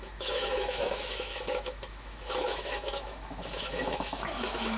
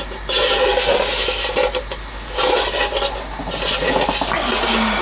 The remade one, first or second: first